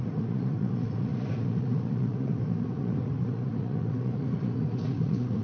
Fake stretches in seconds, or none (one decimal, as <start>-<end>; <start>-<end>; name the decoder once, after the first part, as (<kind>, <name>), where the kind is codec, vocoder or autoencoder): 0.0-5.4 (vocoder, Vocos)